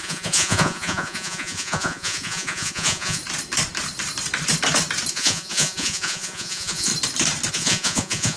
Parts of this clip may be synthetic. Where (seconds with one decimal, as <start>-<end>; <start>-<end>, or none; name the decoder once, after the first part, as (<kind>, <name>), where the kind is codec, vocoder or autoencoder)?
0.0-3.2 (vocoder, Vocos); 5.1-6.9; 7.5-8.4